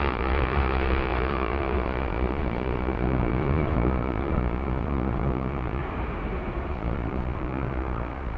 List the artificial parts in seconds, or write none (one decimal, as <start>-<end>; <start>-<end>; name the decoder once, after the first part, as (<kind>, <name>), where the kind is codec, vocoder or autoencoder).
0.0-5.8 (vocoder, Vocos); 6.7-8.4